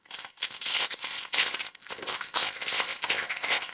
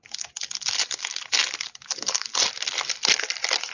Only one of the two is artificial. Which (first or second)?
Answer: first